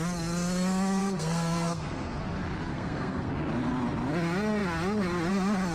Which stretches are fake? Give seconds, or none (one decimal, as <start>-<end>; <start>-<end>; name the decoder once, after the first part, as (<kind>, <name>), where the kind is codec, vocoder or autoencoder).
1.0-2.2 (codec, SNAC); 2.7-3.3